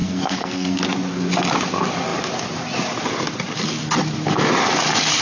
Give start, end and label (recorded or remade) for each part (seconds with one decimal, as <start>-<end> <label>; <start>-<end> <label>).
0.0-0.8 remade; 0.8-5.2 recorded